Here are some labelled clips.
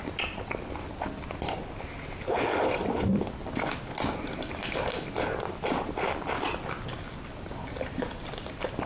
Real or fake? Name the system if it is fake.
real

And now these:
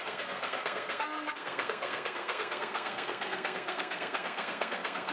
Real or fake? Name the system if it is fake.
fake, codec, SNAC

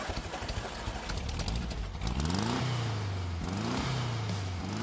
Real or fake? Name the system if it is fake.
real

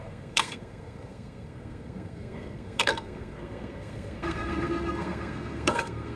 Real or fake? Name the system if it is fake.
fake, codec, SNAC